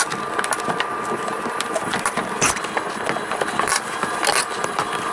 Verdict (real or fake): real